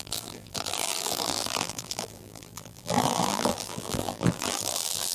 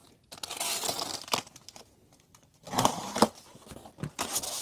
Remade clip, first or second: first